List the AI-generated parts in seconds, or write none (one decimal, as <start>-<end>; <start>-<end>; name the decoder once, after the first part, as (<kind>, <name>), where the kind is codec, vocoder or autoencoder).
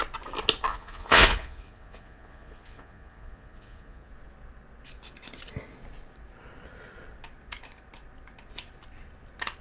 0.7-4.1 (vocoder, Vocos)